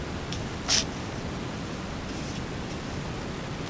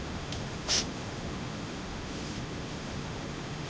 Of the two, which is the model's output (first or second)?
second